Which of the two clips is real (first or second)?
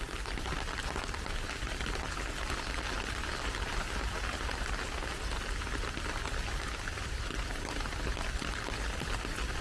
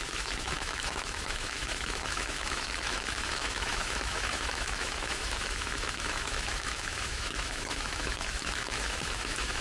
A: first